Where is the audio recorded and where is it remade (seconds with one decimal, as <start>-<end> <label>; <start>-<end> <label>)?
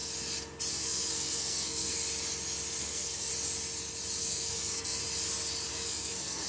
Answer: 0.0-0.7 recorded; 0.7-2.0 remade; 2.0-2.8 recorded; 2.8-3.3 remade; 3.3-4.2 recorded; 4.2-5.0 remade; 5.0-5.7 recorded; 5.7-6.5 remade